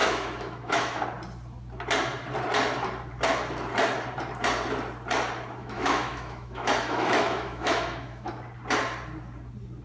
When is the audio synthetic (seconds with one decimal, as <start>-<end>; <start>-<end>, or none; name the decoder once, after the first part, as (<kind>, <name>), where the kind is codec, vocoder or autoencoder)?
0.0-1.0 (autoencoder, DAC-VAE); 5.6-8.3